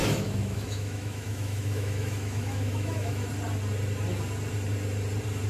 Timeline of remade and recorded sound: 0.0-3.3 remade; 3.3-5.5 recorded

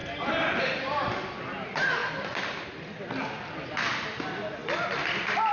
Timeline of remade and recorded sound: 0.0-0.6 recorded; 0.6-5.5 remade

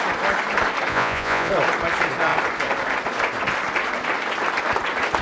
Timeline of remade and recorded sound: 0.0-0.9 recorded; 0.9-1.5 remade; 1.5-5.2 recorded